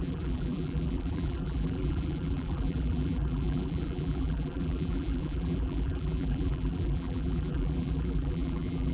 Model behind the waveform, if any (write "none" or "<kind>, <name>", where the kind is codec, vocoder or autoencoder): vocoder, BigVGAN v2